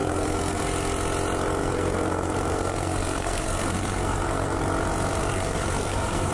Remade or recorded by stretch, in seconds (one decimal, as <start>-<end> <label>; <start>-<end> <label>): 0.0-0.6 remade; 0.6-1.6 recorded; 1.6-4.6 remade; 4.6-5.2 recorded; 5.2-6.3 remade